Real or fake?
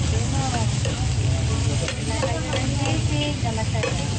real